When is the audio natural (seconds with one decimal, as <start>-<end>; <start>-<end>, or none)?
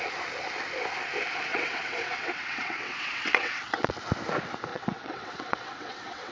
0.0-1.5; 3.9-4.7